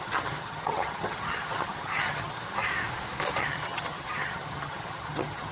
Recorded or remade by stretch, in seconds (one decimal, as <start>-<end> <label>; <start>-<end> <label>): 0.0-2.7 remade; 2.7-3.4 recorded; 3.4-5.5 remade